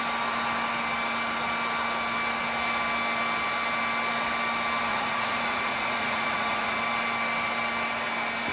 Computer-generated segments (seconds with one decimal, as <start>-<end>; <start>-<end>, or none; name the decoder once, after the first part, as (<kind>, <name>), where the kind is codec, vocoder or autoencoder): 4.9-6.8 (vocoder, Vocos)